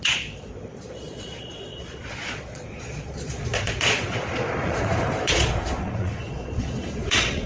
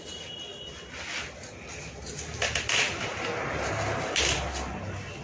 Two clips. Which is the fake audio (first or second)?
first